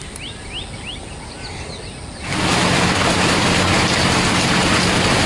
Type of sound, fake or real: real